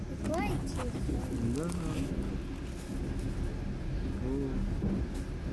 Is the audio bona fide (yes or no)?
yes